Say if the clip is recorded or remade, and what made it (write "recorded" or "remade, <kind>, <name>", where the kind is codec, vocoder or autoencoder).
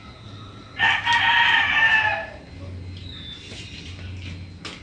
recorded